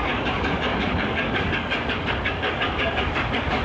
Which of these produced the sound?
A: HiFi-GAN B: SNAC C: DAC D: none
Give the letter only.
C